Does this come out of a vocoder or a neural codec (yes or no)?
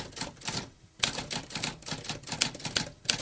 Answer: no